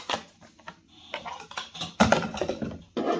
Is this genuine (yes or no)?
yes